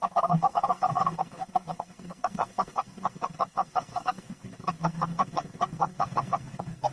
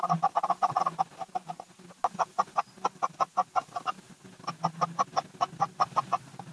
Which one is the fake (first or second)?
first